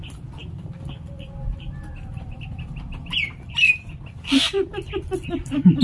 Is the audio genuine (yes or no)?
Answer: no